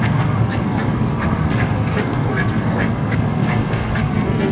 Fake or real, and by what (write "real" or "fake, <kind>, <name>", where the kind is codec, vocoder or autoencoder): fake, codec, SNAC